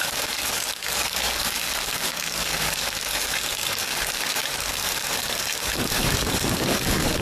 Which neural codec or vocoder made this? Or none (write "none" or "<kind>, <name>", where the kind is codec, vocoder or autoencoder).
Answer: codec, DAC